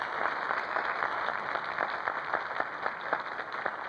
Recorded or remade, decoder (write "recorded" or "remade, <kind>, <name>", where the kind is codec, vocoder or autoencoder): recorded